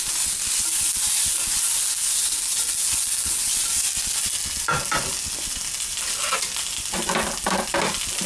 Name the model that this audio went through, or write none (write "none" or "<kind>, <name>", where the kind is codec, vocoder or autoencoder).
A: none